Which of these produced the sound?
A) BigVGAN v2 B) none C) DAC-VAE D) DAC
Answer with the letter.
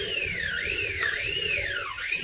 A